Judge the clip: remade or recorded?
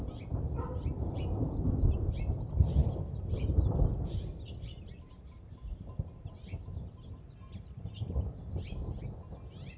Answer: recorded